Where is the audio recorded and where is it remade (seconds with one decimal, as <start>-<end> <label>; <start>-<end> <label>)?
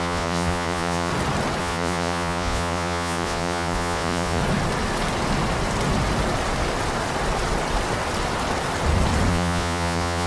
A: 0.0-1.1 remade; 1.1-1.6 recorded; 1.6-4.4 remade; 4.4-9.3 recorded; 9.3-10.3 remade